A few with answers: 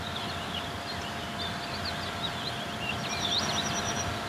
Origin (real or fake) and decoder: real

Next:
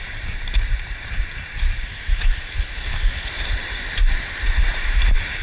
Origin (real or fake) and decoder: fake, vocoder, BigVGAN v2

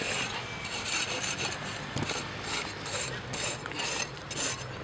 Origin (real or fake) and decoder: real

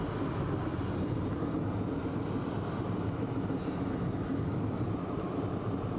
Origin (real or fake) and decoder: real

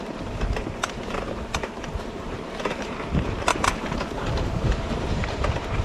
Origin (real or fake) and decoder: fake, vocoder, BigVGAN v2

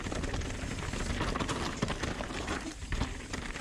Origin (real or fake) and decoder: real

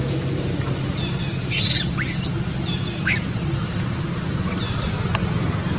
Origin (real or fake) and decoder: real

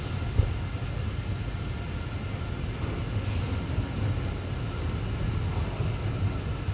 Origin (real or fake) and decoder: real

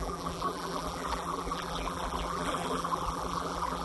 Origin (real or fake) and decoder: fake, vocoder, BigVGAN v2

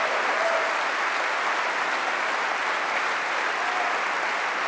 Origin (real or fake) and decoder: real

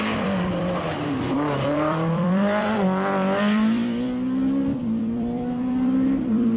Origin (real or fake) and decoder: fake, vocoder, BigVGAN v2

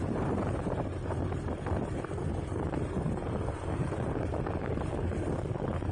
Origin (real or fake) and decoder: fake, vocoder, BigVGAN v2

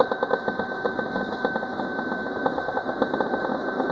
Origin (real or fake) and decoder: real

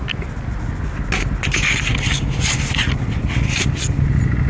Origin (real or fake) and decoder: real